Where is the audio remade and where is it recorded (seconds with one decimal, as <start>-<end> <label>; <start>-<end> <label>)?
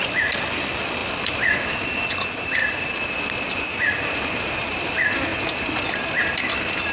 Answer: 0.0-6.9 remade